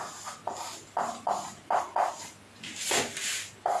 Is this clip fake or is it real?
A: real